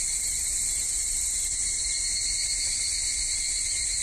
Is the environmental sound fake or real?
real